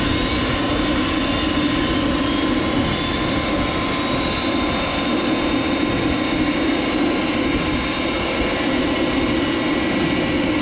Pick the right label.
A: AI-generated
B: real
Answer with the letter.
B